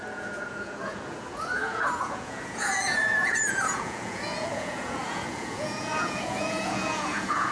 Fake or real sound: fake